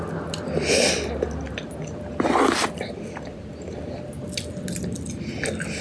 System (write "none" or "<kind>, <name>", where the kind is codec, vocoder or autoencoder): none